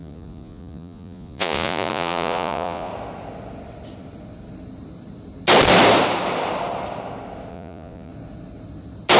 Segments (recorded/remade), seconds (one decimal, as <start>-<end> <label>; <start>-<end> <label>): 0.0-2.9 remade; 2.9-7.5 recorded; 7.5-8.1 remade; 8.1-9.2 recorded